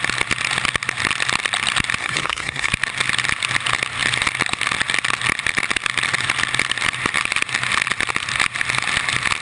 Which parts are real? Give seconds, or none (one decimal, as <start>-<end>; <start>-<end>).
0.0-2.0; 2.7-9.4

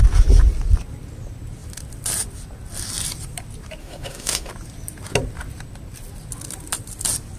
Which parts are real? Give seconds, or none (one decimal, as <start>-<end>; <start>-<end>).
0.0-3.8; 4.5-7.4

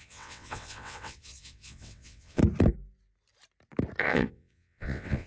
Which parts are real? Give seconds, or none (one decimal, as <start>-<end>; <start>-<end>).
2.4-4.0

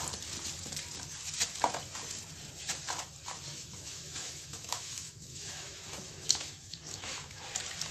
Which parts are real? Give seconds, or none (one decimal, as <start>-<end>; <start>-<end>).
0.0-3.5; 7.4-7.9

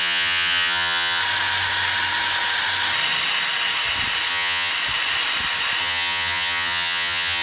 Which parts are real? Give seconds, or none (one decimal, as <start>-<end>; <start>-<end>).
1.2-4.3; 4.7-5.8

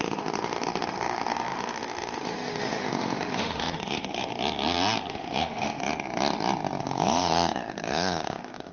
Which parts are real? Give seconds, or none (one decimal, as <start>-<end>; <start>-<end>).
4.3-5.1; 5.8-6.8

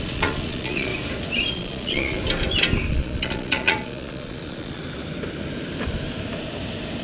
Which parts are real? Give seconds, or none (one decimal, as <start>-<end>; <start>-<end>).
0.9-1.5; 2.2-2.9; 4.8-7.0

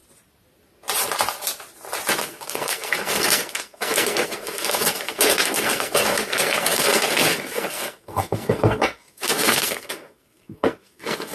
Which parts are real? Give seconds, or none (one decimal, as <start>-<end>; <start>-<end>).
0.0-2.2